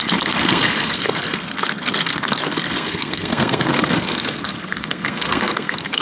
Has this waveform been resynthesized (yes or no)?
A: yes